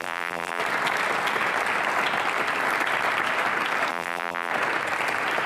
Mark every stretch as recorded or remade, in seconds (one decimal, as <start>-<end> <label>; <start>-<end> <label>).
0.0-0.6 remade; 0.6-3.9 recorded; 3.9-4.5 remade; 4.5-5.5 recorded